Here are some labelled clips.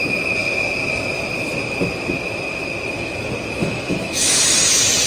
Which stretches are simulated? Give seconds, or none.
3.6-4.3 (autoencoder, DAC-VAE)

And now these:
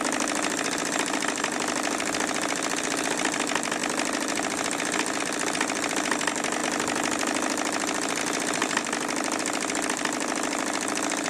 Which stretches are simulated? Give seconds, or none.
none

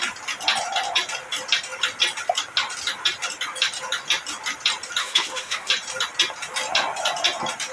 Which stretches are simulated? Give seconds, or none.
5.0-5.7 (autoencoder, DAC-VAE)

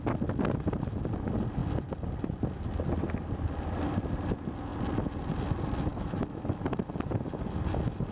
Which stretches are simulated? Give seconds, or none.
5.9-6.9 (autoencoder, DAC-VAE)

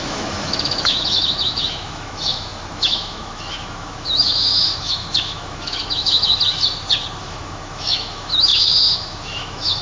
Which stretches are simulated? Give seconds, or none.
0.0-6.3 (autoencoder, DAC-VAE); 7.2-9.8

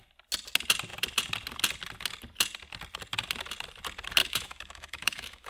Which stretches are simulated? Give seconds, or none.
4.2-5.5 (autoencoder, DAC-VAE)